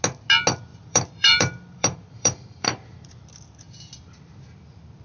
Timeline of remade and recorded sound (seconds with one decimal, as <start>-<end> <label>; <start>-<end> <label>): 0.0-0.7 recorded; 0.7-3.2 remade; 3.2-5.0 recorded